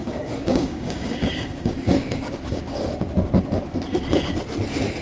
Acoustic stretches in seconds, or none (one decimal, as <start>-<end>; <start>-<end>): 3.0-5.0